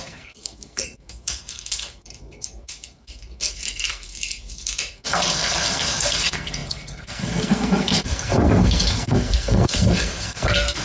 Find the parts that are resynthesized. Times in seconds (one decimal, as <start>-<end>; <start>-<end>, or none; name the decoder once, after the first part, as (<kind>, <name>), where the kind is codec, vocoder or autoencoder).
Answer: 0.0-10.8 (codec, SNAC)